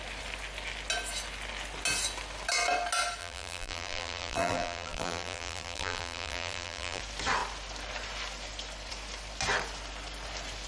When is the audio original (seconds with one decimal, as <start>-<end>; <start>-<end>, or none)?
0.0-3.2; 7.0-10.7